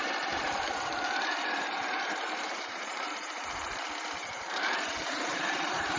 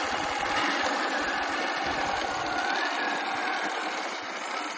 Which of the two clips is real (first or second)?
second